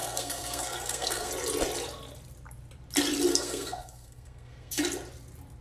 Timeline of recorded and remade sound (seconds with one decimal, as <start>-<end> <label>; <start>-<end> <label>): 0.0-1.3 remade; 1.3-3.3 recorded; 3.3-4.8 remade; 4.8-5.6 recorded